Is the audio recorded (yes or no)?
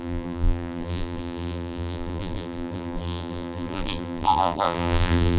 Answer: no